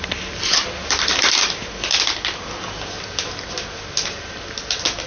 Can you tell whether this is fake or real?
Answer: real